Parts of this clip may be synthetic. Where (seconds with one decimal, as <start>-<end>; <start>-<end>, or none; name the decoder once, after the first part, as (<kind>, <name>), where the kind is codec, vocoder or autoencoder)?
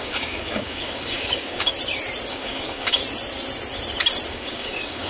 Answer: 0.0-1.7 (codec, DAC); 2.3-3.0; 4.3-5.1